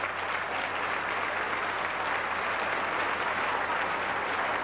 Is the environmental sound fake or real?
real